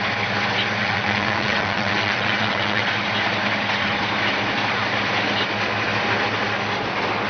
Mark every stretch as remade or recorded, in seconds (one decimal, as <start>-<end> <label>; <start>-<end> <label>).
0.0-0.8 recorded; 0.8-2.8 remade; 2.8-7.3 recorded